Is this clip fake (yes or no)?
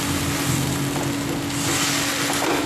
no